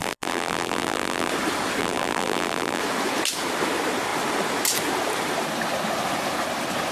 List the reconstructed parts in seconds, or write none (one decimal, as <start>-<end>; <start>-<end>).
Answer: 0.0-1.3; 1.8-2.8